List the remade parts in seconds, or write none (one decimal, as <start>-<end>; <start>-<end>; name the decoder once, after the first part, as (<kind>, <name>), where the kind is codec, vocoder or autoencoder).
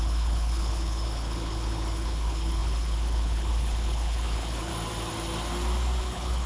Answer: 0.0-4.7 (codec, HILCodec); 6.0-6.5